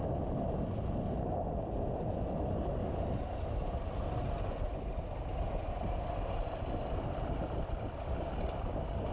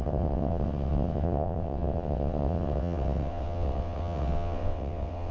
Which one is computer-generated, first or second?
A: second